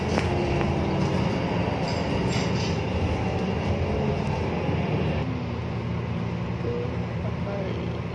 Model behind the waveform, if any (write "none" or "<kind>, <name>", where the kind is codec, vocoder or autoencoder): none